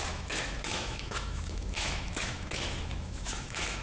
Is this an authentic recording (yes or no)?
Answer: no